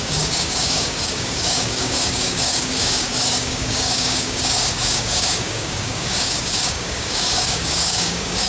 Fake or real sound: fake